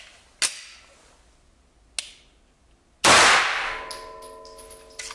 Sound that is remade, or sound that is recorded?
recorded